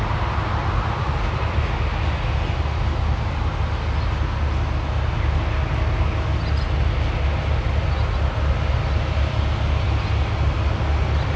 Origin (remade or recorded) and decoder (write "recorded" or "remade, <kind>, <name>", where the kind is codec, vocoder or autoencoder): recorded